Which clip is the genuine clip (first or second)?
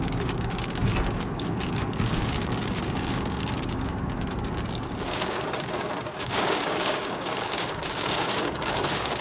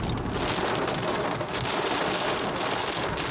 second